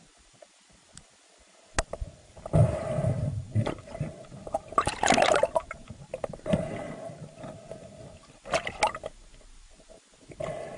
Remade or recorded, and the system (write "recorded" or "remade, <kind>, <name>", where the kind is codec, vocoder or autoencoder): recorded